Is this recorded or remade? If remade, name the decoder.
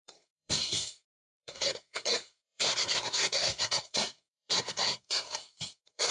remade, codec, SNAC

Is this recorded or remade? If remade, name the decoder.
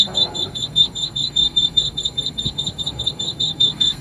remade, codec, SNAC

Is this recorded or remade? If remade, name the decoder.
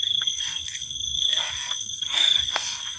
remade, codec, SNAC